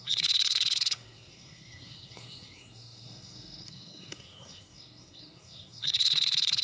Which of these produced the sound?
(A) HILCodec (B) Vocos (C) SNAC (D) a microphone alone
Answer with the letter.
C